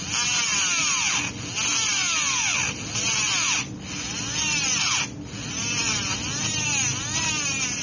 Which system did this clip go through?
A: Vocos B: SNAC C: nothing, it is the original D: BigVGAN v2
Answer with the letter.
C